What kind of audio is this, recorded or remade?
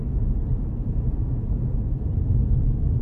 recorded